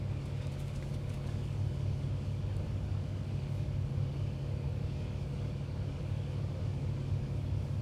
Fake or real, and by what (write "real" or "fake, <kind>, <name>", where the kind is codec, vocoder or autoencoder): fake, codec, DAC